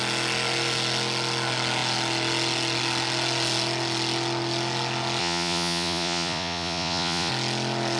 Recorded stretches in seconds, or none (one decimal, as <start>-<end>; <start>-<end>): 0.0-5.2; 7.3-8.0